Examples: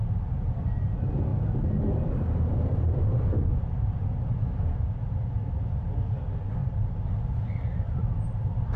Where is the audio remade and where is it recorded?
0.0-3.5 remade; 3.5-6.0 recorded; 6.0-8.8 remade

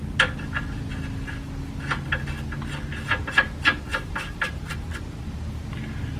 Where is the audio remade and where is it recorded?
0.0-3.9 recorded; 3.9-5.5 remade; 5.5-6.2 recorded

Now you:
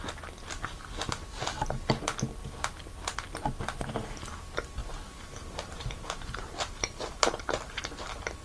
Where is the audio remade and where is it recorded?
0.0-4.8 recorded; 4.8-7.8 remade; 7.8-8.4 recorded

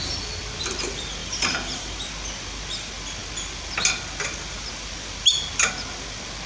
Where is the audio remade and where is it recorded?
0.0-1.2 recorded; 1.2-2.1 remade; 2.1-6.5 recorded